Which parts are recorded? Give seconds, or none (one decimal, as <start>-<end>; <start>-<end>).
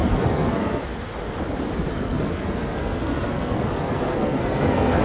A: 0.8-1.9